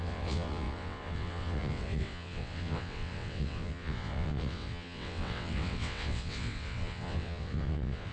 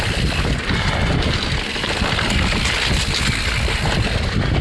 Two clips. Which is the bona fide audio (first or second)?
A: second